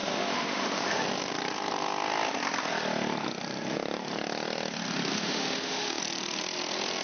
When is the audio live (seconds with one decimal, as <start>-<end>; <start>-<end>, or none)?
1.0-5.1; 6.0-7.0